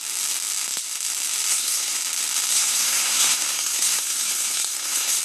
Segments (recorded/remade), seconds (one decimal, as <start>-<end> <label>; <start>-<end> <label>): 0.0-1.5 recorded; 1.5-2.0 remade; 2.0-2.5 recorded; 2.5-5.2 remade